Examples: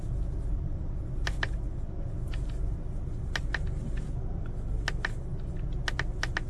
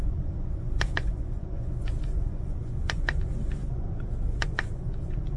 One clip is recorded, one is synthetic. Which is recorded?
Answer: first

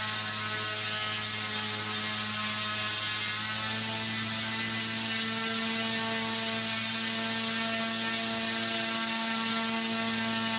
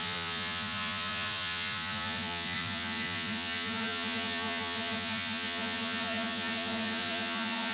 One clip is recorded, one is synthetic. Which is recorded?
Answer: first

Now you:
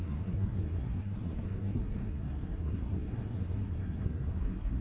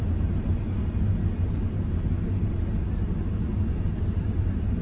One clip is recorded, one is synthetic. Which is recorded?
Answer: second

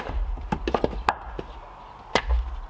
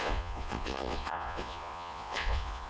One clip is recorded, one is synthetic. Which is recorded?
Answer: first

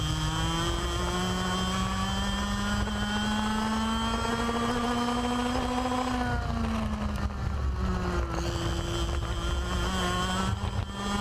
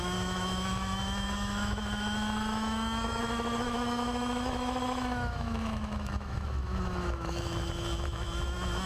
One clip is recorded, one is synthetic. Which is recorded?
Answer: first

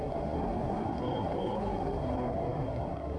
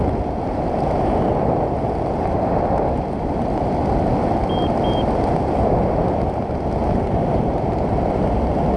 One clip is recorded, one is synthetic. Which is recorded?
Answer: second